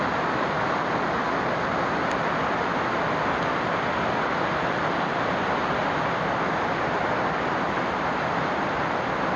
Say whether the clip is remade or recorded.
recorded